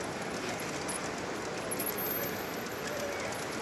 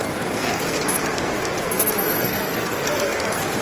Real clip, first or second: first